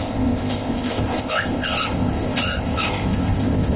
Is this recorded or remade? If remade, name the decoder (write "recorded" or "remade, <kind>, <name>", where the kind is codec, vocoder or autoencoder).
remade, codec, ZipCodec